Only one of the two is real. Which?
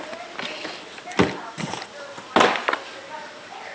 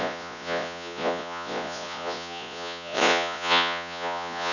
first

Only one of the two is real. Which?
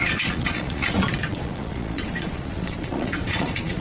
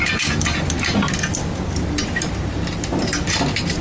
second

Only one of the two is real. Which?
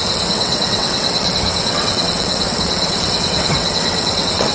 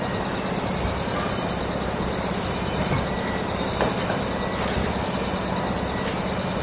second